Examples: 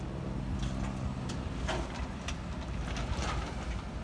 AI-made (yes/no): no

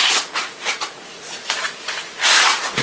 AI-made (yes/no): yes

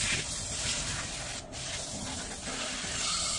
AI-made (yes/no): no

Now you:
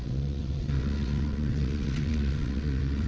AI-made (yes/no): yes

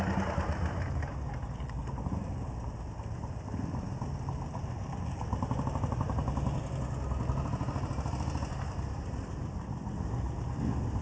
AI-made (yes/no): no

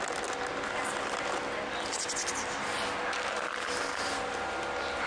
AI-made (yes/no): no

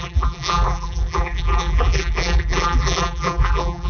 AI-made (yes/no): yes